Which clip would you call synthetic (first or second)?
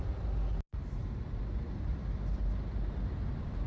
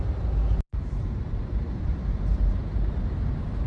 second